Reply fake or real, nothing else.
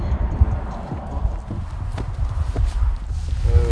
real